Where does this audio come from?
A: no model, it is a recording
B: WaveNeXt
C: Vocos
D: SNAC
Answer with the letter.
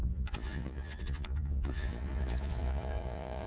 C